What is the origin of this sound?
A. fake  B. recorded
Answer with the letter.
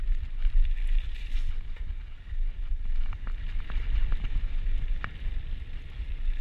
B